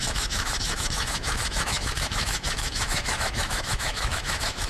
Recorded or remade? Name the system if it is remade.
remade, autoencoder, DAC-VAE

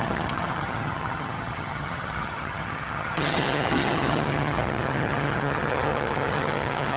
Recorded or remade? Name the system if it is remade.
remade, vocoder, HiFi-GAN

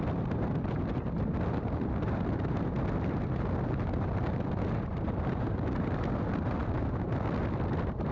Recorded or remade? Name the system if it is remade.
recorded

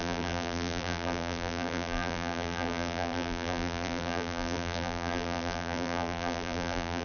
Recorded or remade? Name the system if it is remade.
remade, vocoder, BigVGAN v2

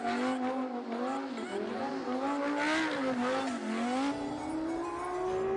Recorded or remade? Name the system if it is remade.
recorded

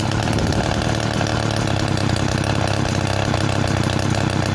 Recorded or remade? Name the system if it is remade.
recorded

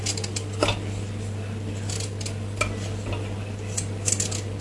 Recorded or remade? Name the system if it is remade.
recorded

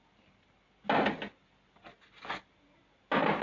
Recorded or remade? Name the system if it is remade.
recorded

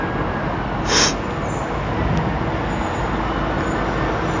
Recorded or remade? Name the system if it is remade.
recorded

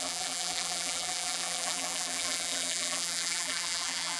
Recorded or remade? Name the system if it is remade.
remade, vocoder, BigVGAN v2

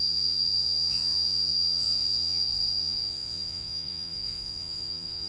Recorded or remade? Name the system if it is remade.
remade, vocoder, Vocos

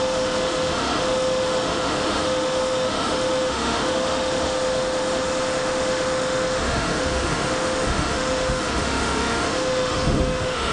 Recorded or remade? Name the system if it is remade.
remade, autoencoder, DAC-VAE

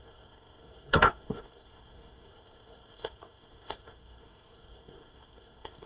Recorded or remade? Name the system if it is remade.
remade, codec, SNAC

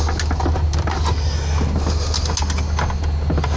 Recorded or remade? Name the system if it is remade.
recorded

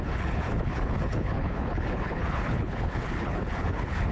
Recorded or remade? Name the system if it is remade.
remade, codec, HILCodec